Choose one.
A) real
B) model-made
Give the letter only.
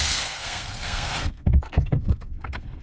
B